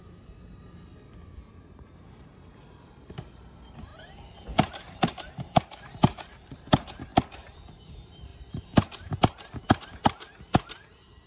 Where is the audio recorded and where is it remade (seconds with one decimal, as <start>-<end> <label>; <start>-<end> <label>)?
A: 0.0-0.9 remade; 0.9-1.5 recorded; 1.5-7.1 remade; 7.1-7.8 recorded; 7.8-11.3 remade